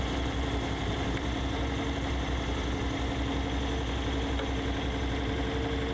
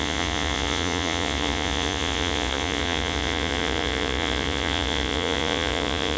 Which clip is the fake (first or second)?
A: second